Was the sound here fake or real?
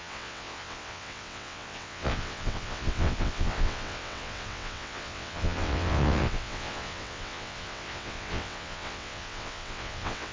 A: fake